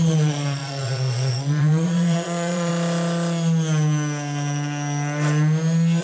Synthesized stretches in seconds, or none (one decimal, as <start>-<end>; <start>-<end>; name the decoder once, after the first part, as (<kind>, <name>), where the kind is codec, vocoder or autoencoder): 0.0-2.7 (vocoder, Vocos)